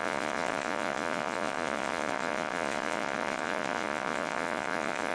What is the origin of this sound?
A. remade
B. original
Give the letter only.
A